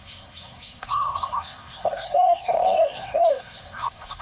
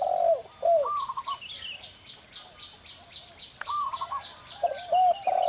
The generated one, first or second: first